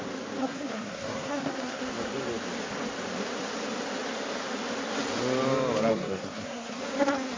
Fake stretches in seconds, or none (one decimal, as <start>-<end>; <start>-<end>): 0.4-1.8; 5.9-6.8